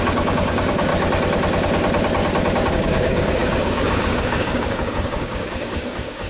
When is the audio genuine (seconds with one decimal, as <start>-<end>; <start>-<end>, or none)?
0.9-2.7